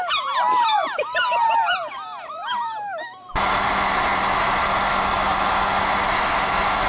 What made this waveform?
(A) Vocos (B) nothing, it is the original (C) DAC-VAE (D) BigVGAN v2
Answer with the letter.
B